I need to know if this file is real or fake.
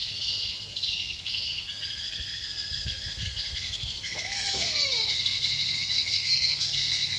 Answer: fake